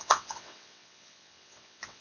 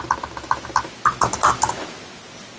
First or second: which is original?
second